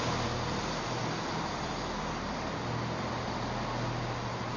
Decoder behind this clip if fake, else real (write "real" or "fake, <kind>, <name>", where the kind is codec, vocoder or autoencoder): real